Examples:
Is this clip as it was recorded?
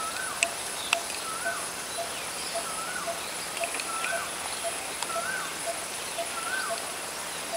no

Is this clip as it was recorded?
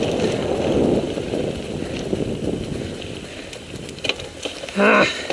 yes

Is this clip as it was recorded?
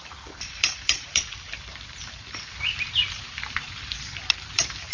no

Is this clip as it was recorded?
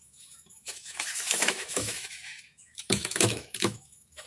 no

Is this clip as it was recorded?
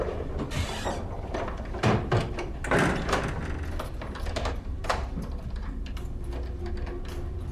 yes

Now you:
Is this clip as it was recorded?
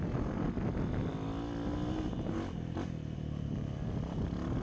yes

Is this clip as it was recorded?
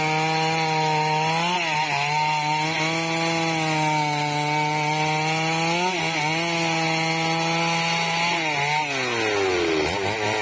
yes